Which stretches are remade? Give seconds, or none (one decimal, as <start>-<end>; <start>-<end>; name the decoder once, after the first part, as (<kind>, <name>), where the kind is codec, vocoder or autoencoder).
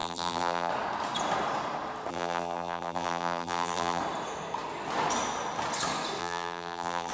0.0-0.7 (vocoder, BigVGAN v2); 2.1-4.0; 6.2-7.1